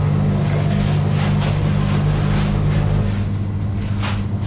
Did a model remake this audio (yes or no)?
no